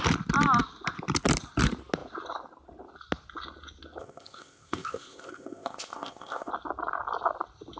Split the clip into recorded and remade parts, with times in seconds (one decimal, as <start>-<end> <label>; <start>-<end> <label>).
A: 0.0-4.0 recorded; 4.0-6.5 remade; 6.5-7.8 recorded